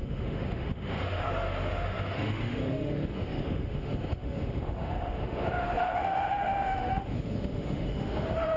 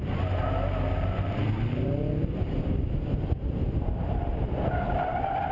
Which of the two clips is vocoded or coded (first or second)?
first